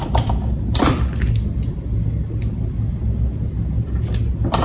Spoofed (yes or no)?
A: no